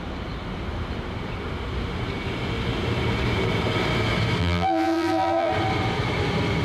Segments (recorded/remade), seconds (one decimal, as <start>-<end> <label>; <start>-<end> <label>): 0.0-4.4 recorded; 4.4-5.5 remade; 5.5-6.6 recorded